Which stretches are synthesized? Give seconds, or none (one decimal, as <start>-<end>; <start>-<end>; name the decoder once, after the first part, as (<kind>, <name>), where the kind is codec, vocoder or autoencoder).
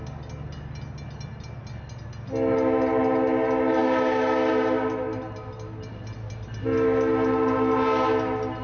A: none